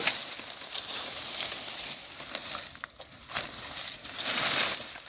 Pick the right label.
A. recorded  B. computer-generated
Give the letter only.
A